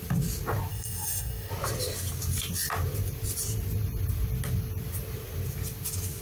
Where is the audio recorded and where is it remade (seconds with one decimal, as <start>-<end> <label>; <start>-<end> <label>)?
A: 0.0-0.7 recorded; 0.7-1.5 remade; 1.5-6.2 recorded